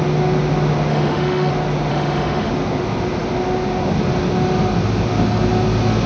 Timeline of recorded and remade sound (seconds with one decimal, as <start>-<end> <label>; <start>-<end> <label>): 0.0-0.9 recorded; 0.9-1.5 remade; 1.5-1.9 recorded; 1.9-2.5 remade; 2.5-6.1 recorded